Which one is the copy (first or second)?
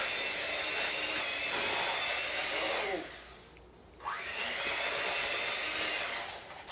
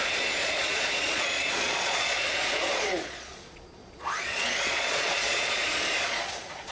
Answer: second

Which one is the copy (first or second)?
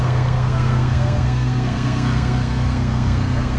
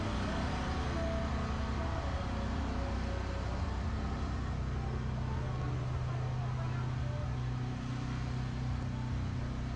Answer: first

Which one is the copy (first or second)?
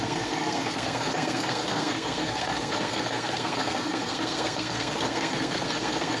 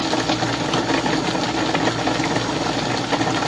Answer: first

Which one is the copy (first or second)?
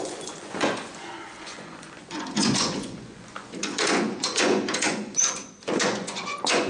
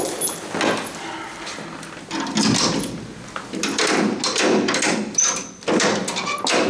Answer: first